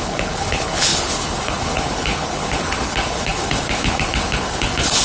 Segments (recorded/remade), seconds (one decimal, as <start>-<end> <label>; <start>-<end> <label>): 0.0-5.0 remade